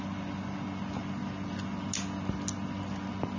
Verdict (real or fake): real